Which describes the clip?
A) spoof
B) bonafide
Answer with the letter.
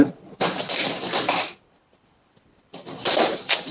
A